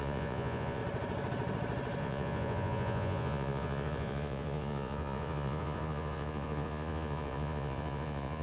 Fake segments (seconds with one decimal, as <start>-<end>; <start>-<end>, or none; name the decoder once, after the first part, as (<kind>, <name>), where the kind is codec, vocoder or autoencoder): 0.0-0.8 (vocoder, Vocos); 2.0-8.4